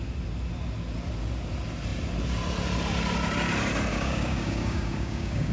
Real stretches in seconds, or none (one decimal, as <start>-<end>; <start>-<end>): 0.0-3.9